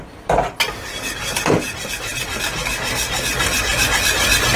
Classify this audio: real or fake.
real